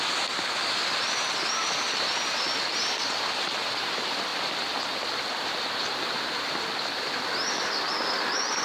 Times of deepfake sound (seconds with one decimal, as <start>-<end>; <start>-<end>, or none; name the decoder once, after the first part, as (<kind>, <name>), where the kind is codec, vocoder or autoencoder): none